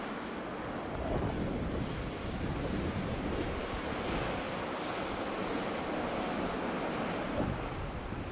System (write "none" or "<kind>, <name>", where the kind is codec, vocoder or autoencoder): none